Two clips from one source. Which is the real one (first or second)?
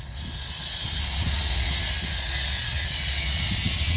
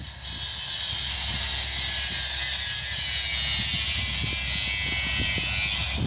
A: second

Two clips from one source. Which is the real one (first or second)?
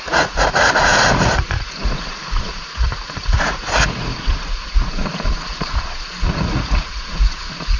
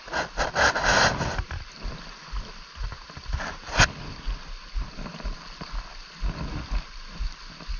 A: second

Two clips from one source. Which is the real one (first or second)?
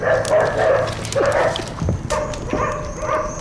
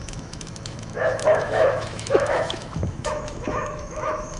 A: first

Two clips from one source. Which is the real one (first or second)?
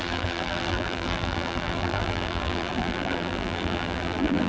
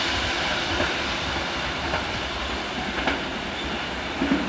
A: second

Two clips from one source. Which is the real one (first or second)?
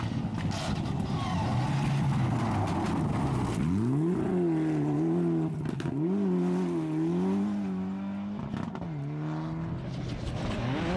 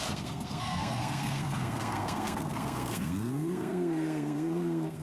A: first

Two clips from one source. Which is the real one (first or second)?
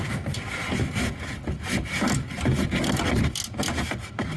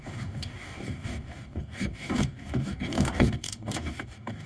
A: first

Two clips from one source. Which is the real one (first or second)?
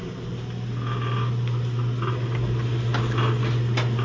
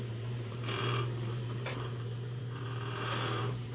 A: first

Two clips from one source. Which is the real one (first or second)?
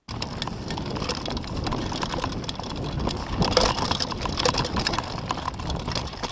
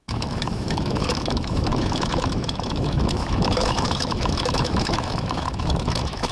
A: first